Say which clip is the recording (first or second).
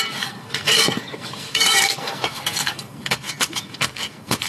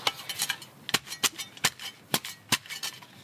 second